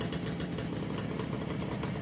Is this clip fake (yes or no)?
no